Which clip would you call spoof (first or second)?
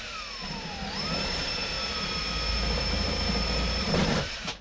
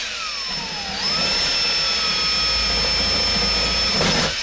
first